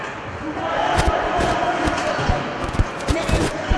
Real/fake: fake